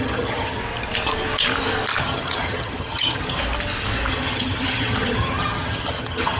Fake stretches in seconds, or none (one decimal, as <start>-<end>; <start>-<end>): 0.0-0.6; 2.0-3.4; 4.1-6.4